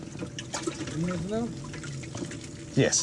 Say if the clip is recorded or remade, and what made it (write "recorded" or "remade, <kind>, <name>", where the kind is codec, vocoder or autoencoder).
recorded